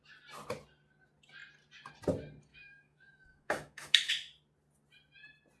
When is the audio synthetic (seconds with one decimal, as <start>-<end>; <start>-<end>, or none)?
2.5-4.1